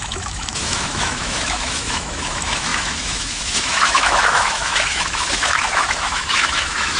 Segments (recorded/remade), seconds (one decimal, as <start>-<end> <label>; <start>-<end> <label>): 0.0-7.0 remade